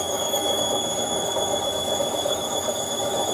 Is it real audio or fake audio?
fake